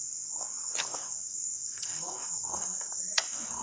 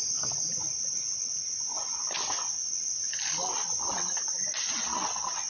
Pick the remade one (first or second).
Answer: first